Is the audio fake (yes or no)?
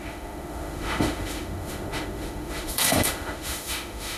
yes